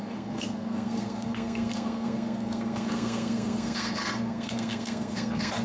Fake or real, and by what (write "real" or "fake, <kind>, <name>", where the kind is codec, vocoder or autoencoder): fake, codec, SNAC